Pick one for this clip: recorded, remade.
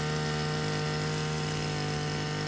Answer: recorded